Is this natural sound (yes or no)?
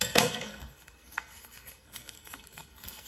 no